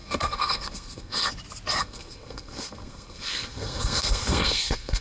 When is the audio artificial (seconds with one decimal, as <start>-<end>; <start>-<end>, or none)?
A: 0.0-1.3; 1.8-5.0